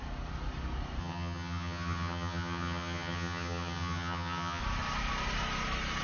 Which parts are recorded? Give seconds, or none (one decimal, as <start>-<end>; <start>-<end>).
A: 0.0-1.0; 4.6-6.0